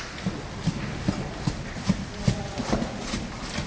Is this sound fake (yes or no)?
no